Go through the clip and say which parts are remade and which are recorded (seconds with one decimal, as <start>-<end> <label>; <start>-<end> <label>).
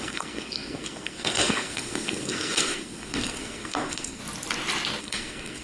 0.0-4.2 remade; 4.2-5.0 recorded; 5.0-5.6 remade